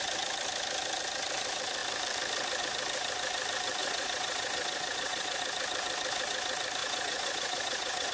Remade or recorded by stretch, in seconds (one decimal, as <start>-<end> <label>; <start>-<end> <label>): 0.0-3.8 recorded; 3.8-5.4 remade; 5.4-6.8 recorded; 6.8-8.1 remade